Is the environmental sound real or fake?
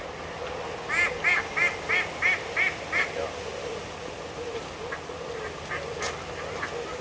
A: real